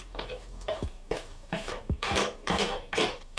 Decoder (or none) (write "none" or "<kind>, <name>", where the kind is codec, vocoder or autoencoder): codec, DAC